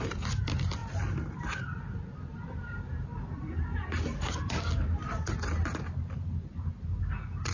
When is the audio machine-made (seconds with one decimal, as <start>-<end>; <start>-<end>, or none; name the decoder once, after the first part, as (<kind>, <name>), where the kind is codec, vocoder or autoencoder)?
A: none